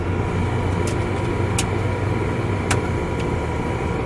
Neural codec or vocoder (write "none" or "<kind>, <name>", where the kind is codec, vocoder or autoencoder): none